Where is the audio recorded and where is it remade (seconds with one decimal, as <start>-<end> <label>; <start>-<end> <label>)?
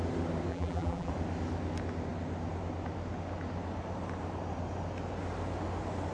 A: 0.0-0.5 recorded; 0.5-1.1 remade; 1.1-6.1 recorded